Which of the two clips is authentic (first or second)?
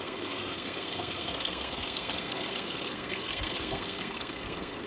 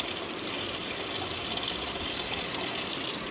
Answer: second